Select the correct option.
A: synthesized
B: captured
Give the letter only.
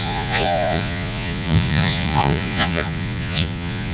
A